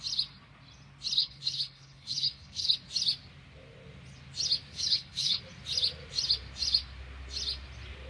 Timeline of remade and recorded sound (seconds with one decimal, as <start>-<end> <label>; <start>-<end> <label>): 0.0-1.2 recorded; 1.2-2.7 remade; 2.7-4.7 recorded; 4.7-5.4 remade; 5.4-8.1 recorded